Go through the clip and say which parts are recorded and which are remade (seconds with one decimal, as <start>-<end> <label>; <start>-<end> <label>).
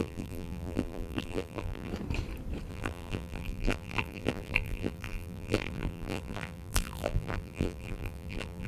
0.0-1.9 remade; 1.9-2.7 recorded; 2.7-8.7 remade